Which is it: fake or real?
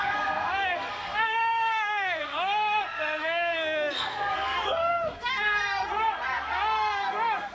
fake